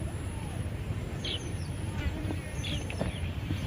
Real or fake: fake